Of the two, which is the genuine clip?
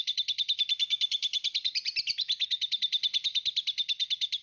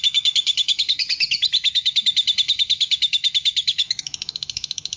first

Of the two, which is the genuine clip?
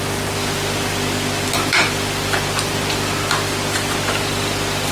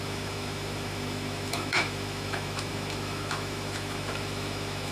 first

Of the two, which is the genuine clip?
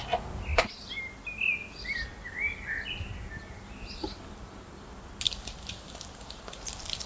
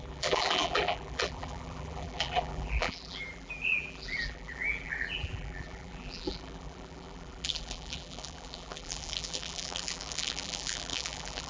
first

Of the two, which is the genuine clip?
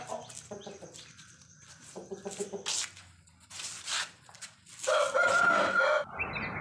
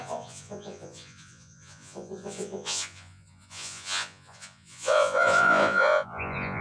first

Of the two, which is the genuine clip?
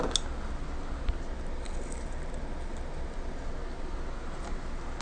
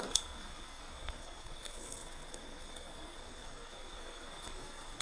first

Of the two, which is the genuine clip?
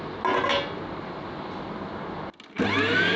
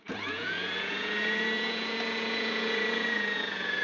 first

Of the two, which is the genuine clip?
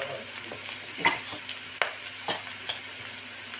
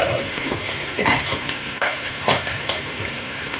first